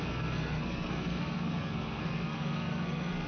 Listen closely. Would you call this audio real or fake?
fake